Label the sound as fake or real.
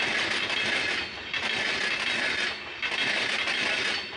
real